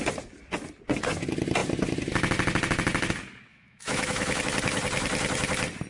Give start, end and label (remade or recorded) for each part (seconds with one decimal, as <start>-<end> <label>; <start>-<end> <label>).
0.0-3.5 recorded; 3.5-4.4 remade; 4.4-5.9 recorded